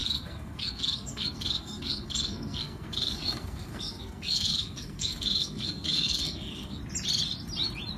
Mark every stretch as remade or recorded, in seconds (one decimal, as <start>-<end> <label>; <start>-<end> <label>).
0.0-6.8 remade; 6.8-8.0 recorded